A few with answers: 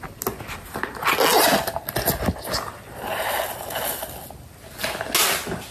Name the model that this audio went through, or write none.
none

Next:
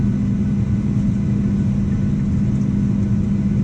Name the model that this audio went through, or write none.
none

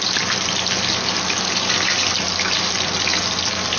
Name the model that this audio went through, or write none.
none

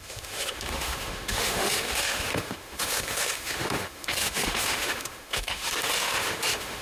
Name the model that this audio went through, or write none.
autoencoder, DAC-VAE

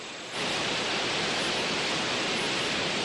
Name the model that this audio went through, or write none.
none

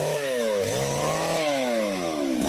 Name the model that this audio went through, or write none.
autoencoder, DAC-VAE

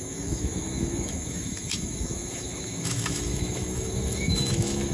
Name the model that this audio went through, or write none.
autoencoder, DAC-VAE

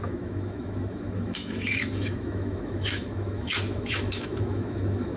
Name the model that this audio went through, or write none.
autoencoder, DAC-VAE